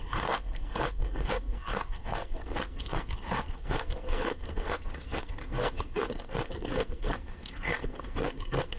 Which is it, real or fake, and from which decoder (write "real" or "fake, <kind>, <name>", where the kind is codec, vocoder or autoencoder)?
fake, codec, SNAC